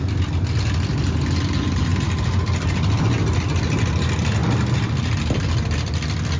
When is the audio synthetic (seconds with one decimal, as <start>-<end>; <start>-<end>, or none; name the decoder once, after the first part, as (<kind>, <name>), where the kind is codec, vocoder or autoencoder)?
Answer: none